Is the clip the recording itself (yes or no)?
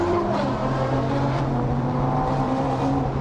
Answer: no